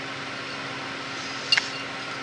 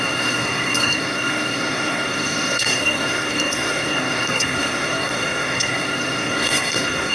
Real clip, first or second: first